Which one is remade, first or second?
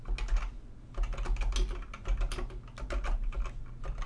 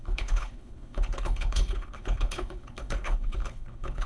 second